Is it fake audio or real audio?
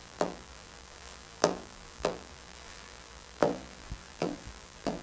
fake